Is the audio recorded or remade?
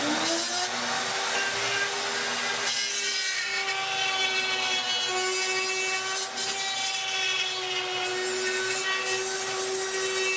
recorded